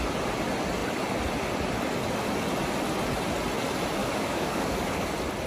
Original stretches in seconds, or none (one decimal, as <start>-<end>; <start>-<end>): 0.0-4.0; 5.1-5.5